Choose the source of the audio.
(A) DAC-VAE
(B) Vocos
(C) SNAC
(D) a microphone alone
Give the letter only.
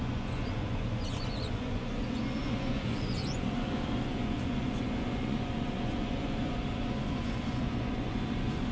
B